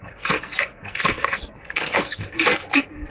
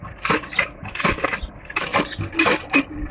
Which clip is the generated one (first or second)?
first